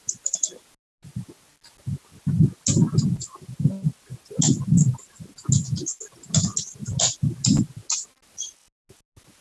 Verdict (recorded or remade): recorded